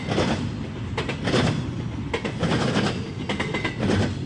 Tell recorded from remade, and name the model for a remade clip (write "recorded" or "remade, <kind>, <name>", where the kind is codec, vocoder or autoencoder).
recorded